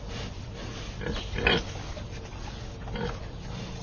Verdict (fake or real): real